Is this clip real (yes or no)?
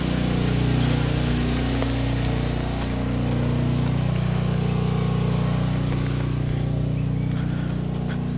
yes